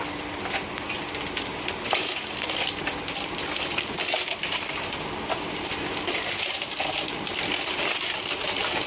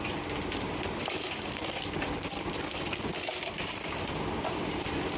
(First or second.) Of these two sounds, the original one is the first